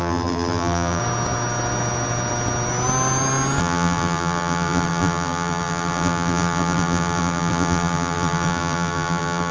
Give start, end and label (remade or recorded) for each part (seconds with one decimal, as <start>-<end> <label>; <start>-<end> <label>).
0.0-1.0 remade; 1.0-3.6 recorded; 3.6-9.5 remade